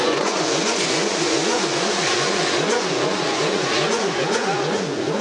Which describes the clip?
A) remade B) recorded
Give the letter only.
A